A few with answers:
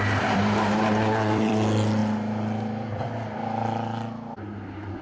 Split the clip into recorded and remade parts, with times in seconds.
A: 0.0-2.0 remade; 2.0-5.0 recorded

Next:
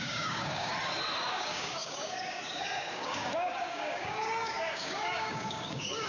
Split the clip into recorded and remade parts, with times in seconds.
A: 0.0-0.7 remade; 0.7-1.3 recorded; 1.3-6.1 remade

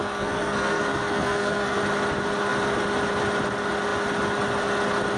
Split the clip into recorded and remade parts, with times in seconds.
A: 0.0-1.8 remade; 1.8-5.2 recorded

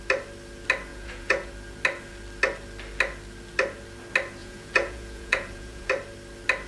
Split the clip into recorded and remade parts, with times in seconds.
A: 0.0-0.9 recorded; 0.9-1.5 remade; 1.5-4.4 recorded; 4.4-5.9 remade; 5.9-6.7 recorded

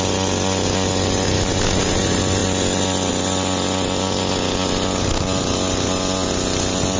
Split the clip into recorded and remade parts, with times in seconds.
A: 0.0-7.0 recorded

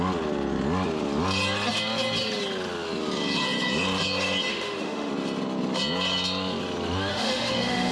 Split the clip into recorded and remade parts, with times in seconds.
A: 0.0-4.5 recorded; 4.5-5.1 remade; 5.1-7.1 recorded; 7.1-7.9 remade

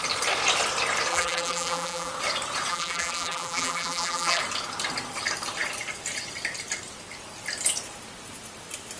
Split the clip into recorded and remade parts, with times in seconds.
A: 0.0-1.1 recorded; 1.1-2.1 remade; 2.1-2.7 recorded; 2.7-4.4 remade; 4.4-9.0 recorded

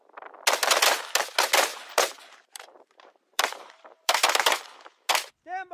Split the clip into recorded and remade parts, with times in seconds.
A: 0.0-1.7 recorded; 1.7-5.1 remade; 5.1-5.7 recorded